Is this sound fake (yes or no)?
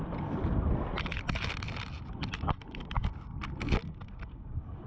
no